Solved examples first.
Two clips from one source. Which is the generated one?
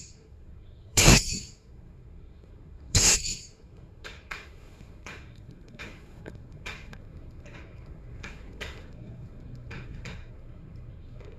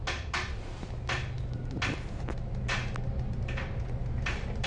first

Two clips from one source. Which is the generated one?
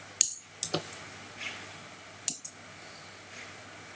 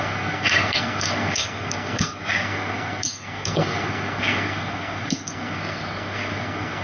second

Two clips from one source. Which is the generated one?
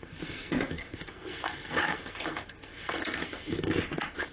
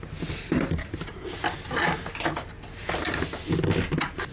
first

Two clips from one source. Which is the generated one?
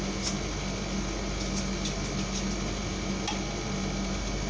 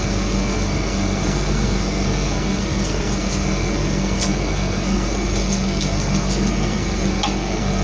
second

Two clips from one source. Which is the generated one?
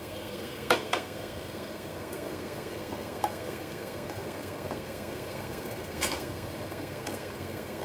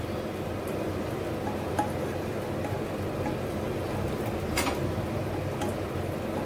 first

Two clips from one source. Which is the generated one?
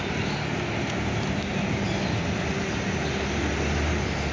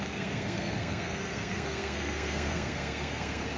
second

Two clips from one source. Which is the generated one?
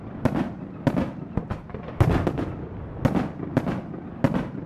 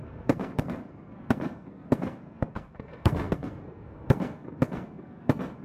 second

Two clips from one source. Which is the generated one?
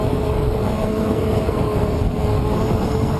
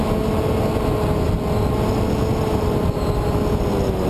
first